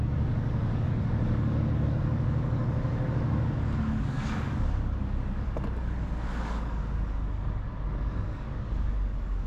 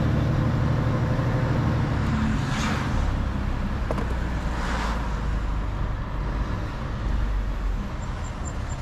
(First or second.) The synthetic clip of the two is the first